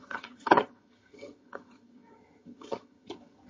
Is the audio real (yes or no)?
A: no